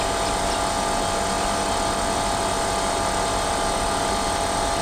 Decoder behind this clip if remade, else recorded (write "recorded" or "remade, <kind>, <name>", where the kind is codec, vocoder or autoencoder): recorded